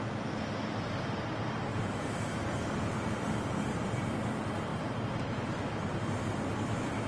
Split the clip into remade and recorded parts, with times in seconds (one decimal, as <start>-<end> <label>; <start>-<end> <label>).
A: 0.0-1.7 recorded; 1.7-2.5 remade; 2.5-4.7 recorded; 4.7-5.9 remade; 5.9-7.1 recorded